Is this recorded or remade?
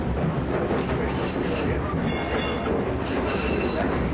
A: recorded